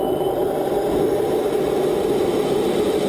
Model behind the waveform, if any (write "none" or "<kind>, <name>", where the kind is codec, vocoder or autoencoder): none